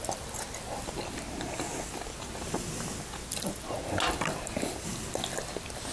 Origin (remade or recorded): recorded